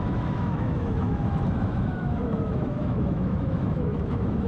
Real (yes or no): no